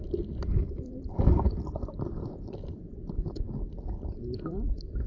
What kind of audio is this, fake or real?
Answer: fake